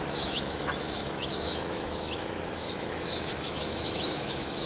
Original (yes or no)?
no